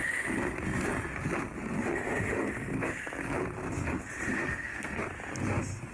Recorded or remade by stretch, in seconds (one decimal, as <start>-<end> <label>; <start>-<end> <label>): 0.0-4.4 recorded; 4.4-5.0 remade; 5.0-5.9 recorded